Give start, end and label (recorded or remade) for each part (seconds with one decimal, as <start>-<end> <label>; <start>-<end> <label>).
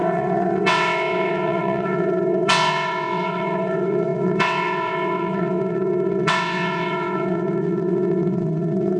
0.0-9.0 remade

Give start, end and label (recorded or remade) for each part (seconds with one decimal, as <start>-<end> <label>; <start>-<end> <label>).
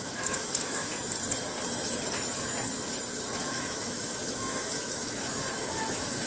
0.0-0.9 remade; 0.9-3.5 recorded; 3.5-6.3 remade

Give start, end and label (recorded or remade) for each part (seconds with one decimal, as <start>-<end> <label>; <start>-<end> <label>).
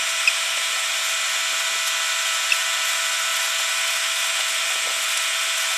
0.0-5.8 recorded